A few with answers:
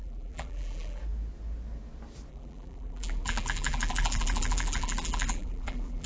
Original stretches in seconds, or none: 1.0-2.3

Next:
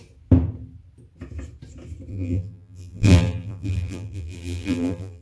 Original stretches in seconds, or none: 0.0-2.1

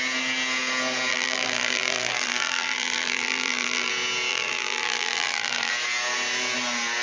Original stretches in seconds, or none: 0.0-1.1; 3.9-4.3; 5.7-7.0